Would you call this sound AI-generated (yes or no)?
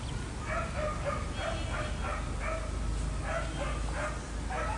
no